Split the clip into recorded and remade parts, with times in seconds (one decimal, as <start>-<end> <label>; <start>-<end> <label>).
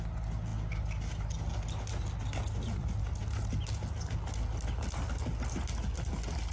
0.0-6.5 recorded